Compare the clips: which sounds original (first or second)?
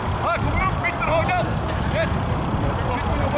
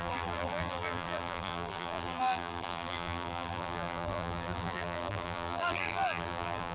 first